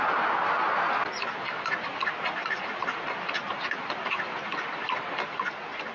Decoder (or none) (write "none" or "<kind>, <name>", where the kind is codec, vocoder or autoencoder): none